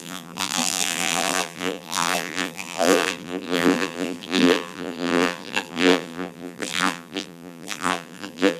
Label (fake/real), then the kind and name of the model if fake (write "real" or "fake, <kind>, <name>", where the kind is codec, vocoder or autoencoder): fake, vocoder, BigVGAN v2